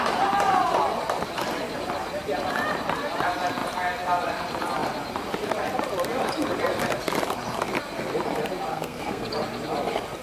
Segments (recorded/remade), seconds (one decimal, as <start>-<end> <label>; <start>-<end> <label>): 0.0-8.7 recorded; 8.7-9.3 remade; 9.3-10.2 recorded